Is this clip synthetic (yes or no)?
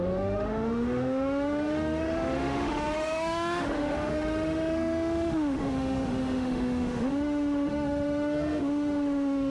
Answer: yes